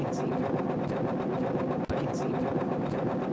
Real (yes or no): yes